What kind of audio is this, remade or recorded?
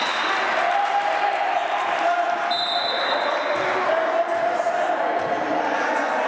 recorded